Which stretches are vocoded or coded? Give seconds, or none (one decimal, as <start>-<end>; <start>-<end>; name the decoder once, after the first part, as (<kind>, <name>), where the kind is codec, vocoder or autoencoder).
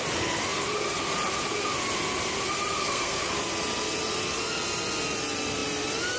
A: 2.8-3.3 (codec, SNAC)